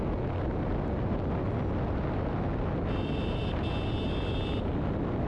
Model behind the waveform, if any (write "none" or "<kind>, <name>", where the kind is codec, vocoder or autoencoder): none